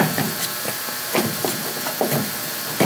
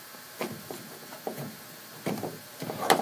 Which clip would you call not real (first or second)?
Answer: second